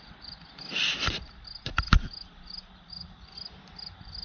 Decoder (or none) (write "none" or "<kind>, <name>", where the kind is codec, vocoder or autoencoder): none